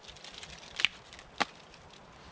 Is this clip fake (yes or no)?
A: no